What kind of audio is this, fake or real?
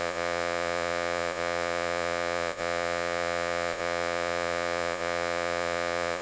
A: fake